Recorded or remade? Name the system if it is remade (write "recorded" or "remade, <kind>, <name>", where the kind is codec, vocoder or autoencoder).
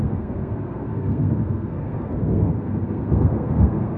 remade, codec, SNAC